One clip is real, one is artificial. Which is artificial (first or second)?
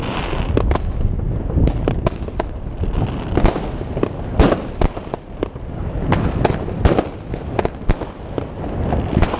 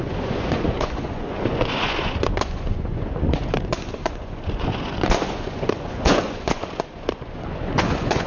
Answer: second